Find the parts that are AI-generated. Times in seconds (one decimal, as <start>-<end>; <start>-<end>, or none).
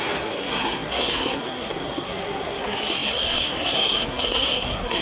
0.0-5.0